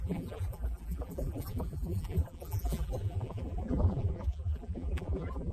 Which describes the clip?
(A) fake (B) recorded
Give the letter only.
A